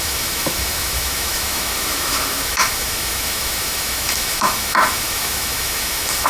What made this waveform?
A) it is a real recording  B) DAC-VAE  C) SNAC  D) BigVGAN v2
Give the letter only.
B